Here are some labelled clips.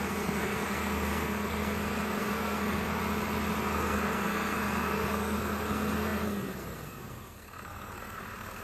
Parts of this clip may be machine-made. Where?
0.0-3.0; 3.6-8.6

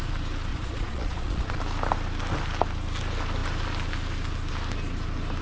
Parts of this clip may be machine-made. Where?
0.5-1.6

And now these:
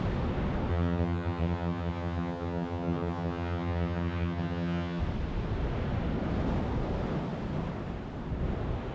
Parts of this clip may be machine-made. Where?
0.7-5.0

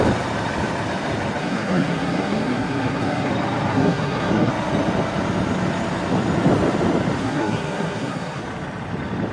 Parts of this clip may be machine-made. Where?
1.4-3.3; 3.7-4.5; 7.2-8.4